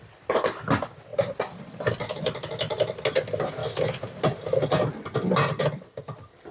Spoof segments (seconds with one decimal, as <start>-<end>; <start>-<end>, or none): 1.1-1.8